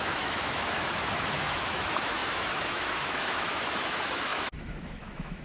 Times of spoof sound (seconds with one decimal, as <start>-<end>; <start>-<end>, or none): 0.0-5.4